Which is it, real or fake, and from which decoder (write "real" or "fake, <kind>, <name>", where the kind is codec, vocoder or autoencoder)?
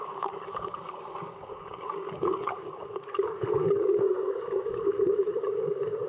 fake, codec, DAC